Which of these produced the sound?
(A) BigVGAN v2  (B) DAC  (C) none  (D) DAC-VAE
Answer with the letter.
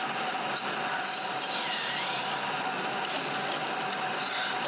A